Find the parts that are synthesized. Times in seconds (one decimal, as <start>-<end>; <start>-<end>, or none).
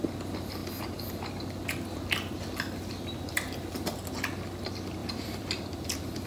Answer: 5.0-5.6